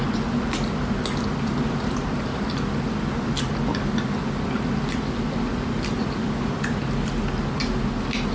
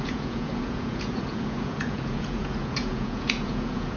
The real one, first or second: first